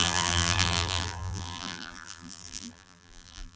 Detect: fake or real fake